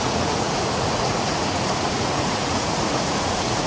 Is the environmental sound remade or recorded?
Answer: remade